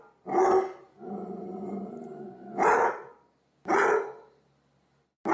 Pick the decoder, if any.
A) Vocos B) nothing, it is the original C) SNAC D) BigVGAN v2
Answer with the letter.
B